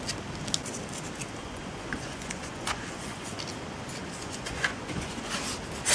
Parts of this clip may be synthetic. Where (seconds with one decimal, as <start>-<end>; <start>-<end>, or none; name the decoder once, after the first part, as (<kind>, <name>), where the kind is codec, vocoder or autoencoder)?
1.4-3.4 (vocoder, Vocos); 4.0-5.3